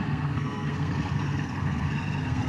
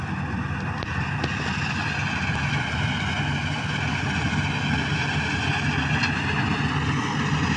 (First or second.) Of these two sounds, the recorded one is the second